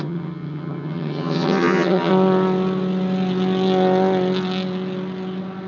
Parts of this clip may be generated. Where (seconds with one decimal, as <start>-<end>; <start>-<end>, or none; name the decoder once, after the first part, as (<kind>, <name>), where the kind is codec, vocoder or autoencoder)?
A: 0.0-2.1 (vocoder, HiFi-GAN)